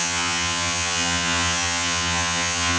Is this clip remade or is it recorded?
remade